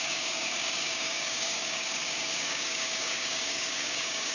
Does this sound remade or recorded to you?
remade